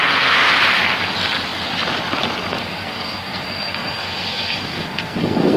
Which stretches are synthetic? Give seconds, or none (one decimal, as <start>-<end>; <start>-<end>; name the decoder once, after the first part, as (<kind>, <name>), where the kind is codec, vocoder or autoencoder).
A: 0.0-0.5 (codec, SNAC); 2.5-5.6